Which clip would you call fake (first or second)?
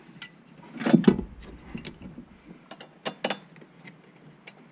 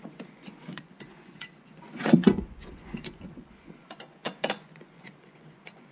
second